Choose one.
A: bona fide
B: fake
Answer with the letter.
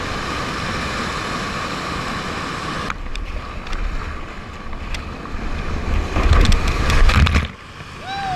A